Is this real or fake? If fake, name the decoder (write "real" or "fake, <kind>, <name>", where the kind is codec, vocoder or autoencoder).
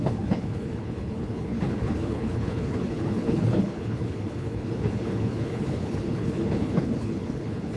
fake, codec, HILCodec